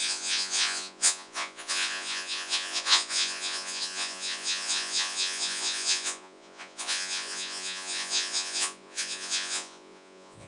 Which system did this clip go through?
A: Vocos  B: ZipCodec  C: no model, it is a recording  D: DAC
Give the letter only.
A